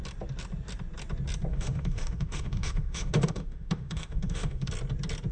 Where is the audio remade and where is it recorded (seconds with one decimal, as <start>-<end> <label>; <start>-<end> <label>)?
0.0-1.5 recorded; 1.5-4.7 remade; 4.7-5.3 recorded